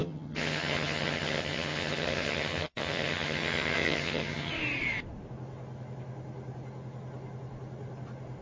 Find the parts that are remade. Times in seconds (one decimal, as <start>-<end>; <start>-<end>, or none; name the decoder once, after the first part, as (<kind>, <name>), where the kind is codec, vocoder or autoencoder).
0.0-4.5 (vocoder, HiFi-GAN)